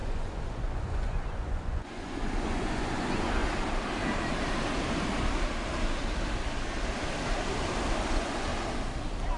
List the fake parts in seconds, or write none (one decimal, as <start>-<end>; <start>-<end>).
0.0-3.4; 8.0-8.5